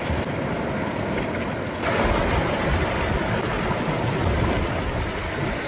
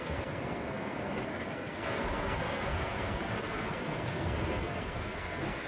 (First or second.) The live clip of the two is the first